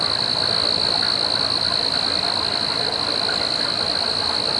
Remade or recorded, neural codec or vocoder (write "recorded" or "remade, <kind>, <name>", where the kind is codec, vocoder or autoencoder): recorded